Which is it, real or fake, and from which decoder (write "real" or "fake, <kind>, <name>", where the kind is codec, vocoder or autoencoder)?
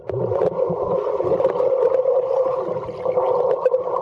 real